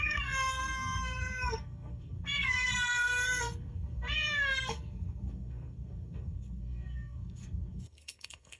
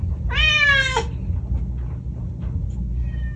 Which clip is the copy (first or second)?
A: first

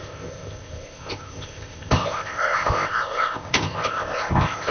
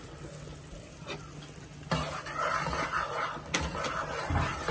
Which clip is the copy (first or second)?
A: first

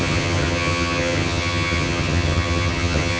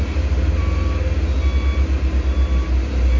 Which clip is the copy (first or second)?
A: first